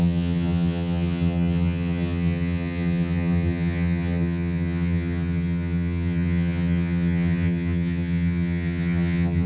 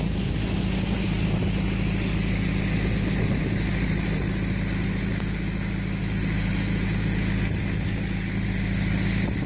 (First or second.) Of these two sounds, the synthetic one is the first